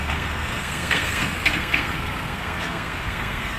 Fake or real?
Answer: fake